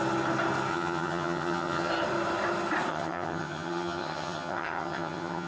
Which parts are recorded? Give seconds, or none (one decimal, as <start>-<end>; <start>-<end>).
0.0-0.7; 1.9-2.9